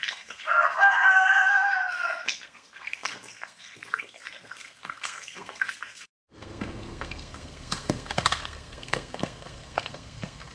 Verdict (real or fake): fake